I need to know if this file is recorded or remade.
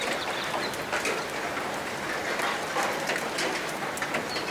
recorded